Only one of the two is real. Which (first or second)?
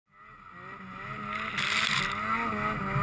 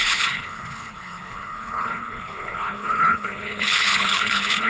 first